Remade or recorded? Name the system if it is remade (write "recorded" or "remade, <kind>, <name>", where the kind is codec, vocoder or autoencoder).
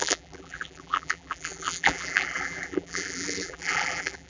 remade, vocoder, BigVGAN v2